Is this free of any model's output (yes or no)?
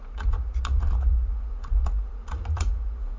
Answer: no